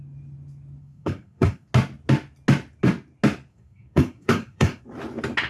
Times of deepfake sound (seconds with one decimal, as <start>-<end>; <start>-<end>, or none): 0.8-1.7; 3.5-4.8